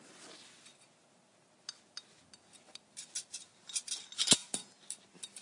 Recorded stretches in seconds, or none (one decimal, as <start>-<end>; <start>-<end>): 0.0-5.4